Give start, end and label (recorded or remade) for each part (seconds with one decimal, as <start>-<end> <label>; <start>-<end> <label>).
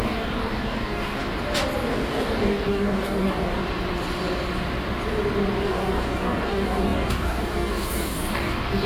0.0-1.2 remade; 1.2-1.9 recorded; 1.9-3.6 remade; 3.6-5.6 recorded; 5.6-8.9 remade